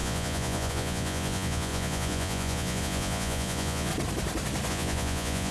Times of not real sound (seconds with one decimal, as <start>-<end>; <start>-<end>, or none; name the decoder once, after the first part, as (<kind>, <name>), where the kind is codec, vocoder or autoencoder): 0.0-3.9 (vocoder, Vocos); 4.7-5.5